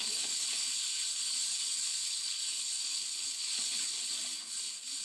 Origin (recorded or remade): remade